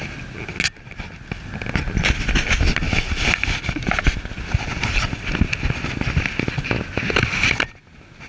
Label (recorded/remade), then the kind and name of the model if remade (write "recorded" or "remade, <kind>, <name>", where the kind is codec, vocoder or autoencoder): recorded